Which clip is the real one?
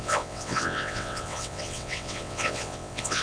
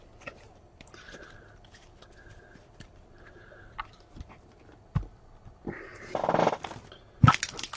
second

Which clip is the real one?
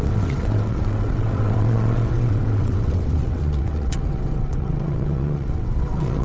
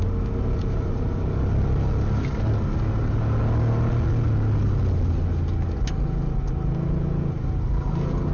second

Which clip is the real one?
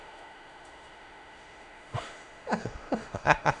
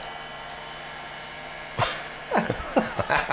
second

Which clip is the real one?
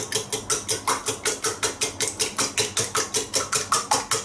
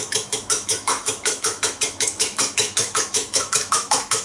first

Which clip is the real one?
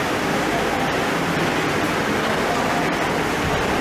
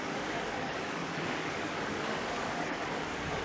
first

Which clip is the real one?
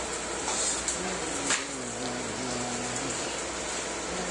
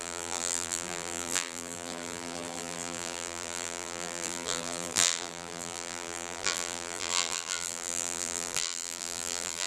first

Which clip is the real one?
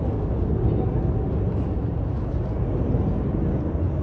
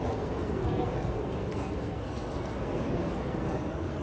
first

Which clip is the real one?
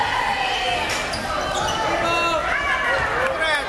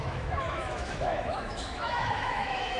first